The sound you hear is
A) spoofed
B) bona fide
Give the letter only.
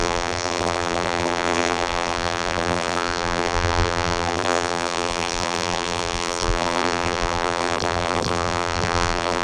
A